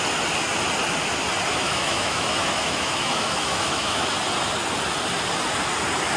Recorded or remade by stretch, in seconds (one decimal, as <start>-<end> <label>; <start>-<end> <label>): 0.0-1.6 recorded; 1.6-4.1 remade; 4.1-6.2 recorded